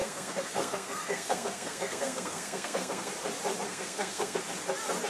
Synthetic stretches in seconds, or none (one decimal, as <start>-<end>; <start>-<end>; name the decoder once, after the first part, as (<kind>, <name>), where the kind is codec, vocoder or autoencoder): 0.0-3.1 (codec, SNAC); 3.7-4.4